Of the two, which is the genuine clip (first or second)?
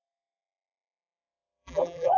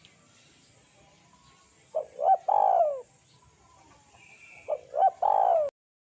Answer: second